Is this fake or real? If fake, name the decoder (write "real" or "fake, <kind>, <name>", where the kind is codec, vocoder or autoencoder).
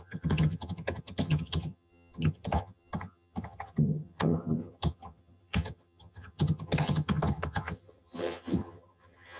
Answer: fake, vocoder, HiFi-GAN